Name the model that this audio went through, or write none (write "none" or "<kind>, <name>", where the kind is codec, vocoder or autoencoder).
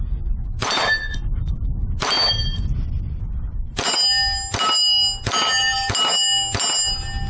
none